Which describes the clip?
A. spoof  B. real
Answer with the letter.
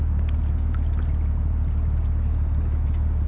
B